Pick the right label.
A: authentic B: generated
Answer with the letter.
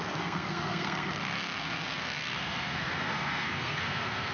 B